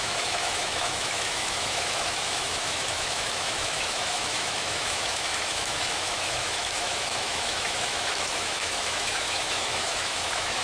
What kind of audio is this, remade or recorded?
remade